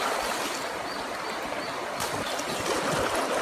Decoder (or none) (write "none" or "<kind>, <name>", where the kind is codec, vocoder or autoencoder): none